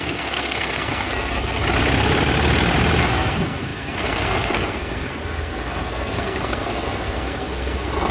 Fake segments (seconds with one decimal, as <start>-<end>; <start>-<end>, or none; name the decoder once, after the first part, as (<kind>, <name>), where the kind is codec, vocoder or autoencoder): 0.0-1.6 (codec, SNAC); 3.0-8.1